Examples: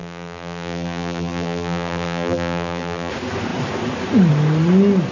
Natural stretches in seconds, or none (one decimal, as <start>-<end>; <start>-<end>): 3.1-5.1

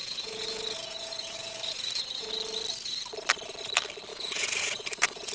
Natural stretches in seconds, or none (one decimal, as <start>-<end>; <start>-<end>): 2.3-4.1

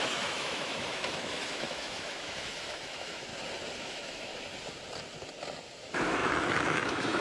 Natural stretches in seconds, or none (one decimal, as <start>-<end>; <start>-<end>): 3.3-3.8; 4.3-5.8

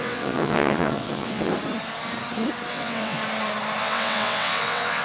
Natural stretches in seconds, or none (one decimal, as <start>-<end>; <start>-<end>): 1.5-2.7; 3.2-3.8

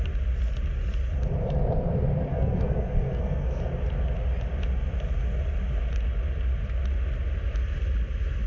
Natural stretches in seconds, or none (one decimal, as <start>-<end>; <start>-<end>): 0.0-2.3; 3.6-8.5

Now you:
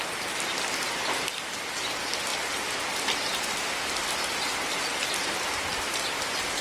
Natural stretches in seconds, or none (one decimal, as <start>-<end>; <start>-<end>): 0.0-6.6

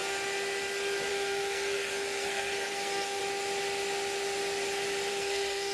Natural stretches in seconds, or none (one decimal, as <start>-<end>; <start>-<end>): 0.0-1.1; 3.2-5.1

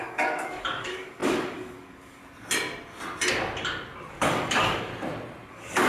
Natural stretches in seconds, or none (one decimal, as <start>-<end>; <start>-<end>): 2.2-4.1; 4.9-5.5